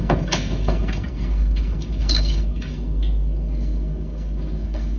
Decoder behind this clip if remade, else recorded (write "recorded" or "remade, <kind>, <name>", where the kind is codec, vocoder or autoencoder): remade, codec, SNAC